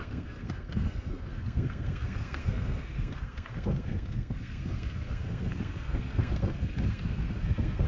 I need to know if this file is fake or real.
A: fake